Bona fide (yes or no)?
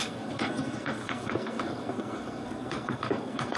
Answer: no